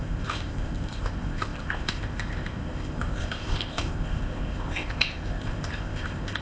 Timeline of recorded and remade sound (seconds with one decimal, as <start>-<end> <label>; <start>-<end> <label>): 0.0-6.4 remade